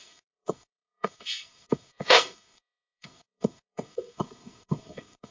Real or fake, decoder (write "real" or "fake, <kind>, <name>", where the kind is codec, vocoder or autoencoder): fake, codec, SNAC